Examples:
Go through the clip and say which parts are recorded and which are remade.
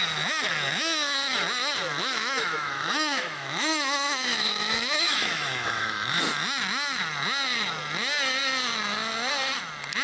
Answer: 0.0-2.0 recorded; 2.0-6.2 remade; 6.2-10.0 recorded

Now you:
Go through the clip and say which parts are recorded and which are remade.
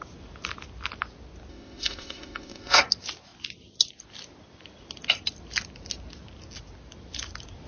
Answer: 0.0-1.5 recorded; 1.5-2.8 remade; 2.8-7.7 recorded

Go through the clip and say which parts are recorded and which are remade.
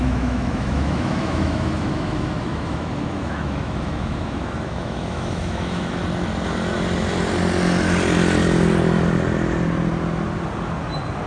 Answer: 0.0-6.0 remade; 6.0-11.3 recorded